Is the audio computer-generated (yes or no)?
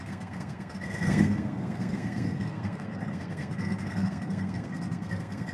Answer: yes